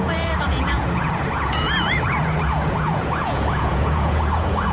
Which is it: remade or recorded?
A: remade